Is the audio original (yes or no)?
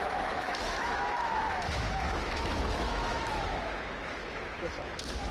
no